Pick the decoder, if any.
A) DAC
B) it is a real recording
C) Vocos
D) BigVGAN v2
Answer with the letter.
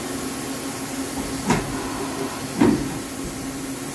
B